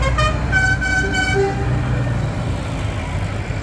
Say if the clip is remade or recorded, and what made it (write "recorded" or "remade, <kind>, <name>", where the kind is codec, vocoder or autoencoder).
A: recorded